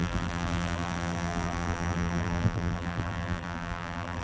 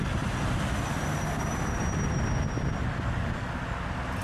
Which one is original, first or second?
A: second